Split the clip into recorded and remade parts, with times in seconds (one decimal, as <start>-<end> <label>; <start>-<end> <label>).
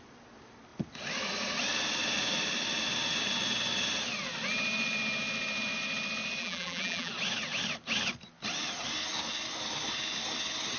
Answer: 0.0-6.4 recorded; 6.4-7.1 remade; 7.1-10.8 recorded